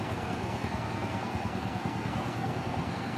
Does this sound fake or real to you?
fake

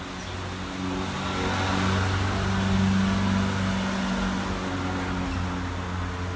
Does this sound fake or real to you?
real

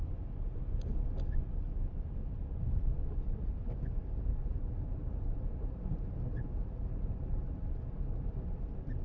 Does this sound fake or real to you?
real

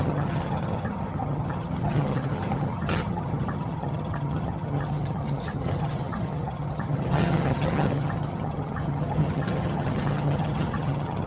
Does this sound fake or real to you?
fake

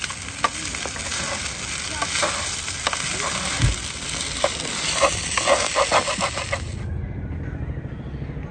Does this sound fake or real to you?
real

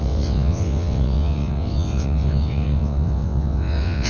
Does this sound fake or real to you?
fake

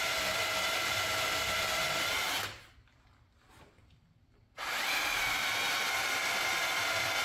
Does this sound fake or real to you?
fake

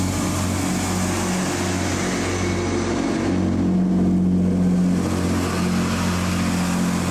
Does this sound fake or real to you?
real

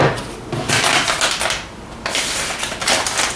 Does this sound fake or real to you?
real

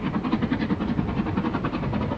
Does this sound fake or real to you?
real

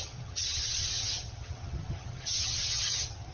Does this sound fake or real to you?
fake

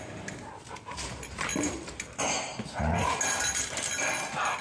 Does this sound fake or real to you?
real